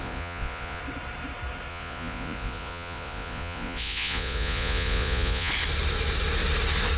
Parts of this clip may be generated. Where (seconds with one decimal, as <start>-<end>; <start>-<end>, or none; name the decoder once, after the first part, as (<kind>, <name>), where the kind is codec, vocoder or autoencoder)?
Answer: 0.0-0.8 (vocoder, Vocos); 1.7-5.5